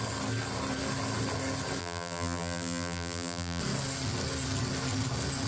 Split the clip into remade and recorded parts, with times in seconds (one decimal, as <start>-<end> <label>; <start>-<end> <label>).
0.0-1.8 recorded; 1.8-3.6 remade; 3.6-5.5 recorded